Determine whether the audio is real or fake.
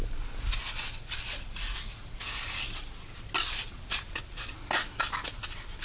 real